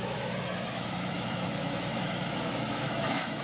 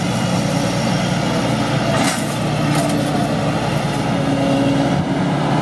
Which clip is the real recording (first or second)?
second